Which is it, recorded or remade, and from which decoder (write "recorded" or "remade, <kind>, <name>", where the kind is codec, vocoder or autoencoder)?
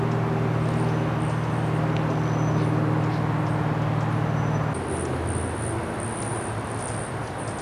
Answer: recorded